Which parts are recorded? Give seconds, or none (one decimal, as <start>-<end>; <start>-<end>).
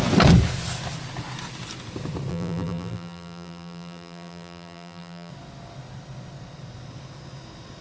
0.0-2.3; 5.3-7.8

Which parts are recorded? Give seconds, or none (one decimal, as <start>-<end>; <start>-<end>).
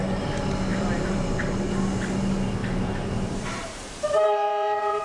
0.0-0.7; 1.6-2.6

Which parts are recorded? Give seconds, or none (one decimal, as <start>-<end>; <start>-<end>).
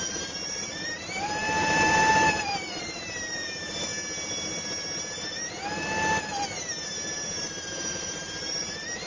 3.9-7.9